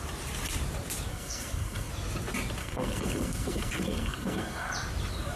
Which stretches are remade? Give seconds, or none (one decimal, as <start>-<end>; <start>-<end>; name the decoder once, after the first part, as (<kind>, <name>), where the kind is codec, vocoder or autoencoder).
1.1-1.9 (codec, SNAC); 2.6-4.7